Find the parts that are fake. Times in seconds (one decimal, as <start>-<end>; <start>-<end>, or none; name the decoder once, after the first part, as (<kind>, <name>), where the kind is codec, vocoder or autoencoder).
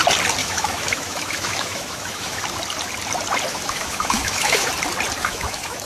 0.4-2.4 (autoencoder, DAC-VAE); 3.5-4.7; 5.2-5.9